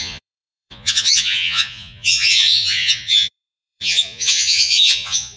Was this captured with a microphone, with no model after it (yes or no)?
no